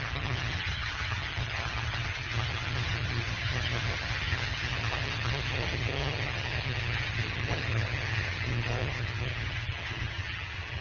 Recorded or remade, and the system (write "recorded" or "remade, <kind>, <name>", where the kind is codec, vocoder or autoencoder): remade, vocoder, HiFi-GAN